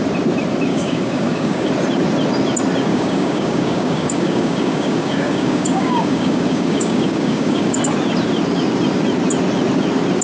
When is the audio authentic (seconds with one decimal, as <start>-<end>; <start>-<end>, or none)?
0.0-0.7; 1.7-2.9; 7.8-10.2